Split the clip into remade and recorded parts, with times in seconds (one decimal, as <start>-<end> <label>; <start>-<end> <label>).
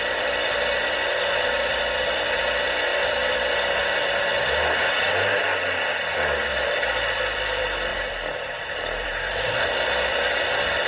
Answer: 0.0-4.3 remade; 4.3-6.5 recorded; 6.5-10.9 remade